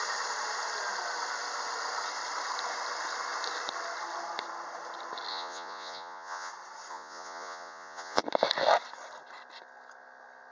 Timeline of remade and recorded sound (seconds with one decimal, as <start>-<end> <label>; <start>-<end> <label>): 0.0-5.3 recorded; 5.3-6.5 remade; 6.5-6.9 recorded; 6.9-8.2 remade; 8.2-10.5 recorded